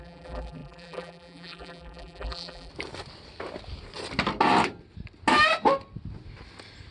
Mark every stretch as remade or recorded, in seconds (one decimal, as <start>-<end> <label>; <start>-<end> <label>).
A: 0.0-2.7 remade; 2.7-6.9 recorded